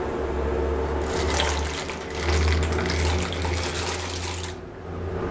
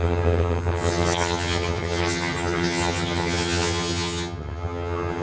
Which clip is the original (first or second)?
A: first